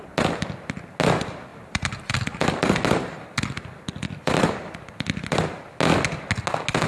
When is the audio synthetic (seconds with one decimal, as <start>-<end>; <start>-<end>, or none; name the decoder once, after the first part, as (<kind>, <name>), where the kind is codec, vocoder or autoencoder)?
none